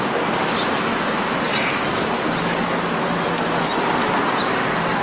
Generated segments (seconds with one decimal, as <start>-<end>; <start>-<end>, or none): 0.9-2.1